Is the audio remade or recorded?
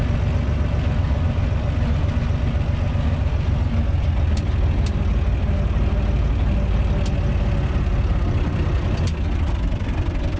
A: recorded